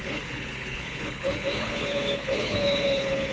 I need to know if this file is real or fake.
fake